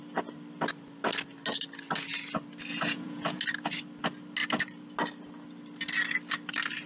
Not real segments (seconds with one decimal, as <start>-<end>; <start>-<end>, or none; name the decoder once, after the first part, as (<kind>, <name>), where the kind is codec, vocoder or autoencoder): 2.7-3.4 (vocoder, Vocos)